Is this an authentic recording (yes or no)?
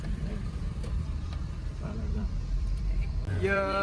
no